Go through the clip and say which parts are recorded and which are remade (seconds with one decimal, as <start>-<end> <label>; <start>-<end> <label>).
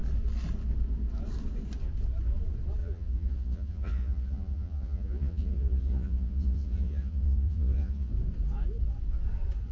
0.0-2.8 recorded; 2.8-8.1 remade; 8.1-9.7 recorded